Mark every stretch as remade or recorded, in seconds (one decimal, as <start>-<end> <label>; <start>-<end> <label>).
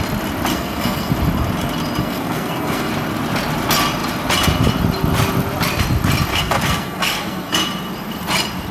0.0-0.5 recorded; 0.5-1.1 remade; 1.1-2.0 recorded; 2.0-2.9 remade; 2.9-6.3 recorded; 6.3-7.5 remade; 7.5-8.7 recorded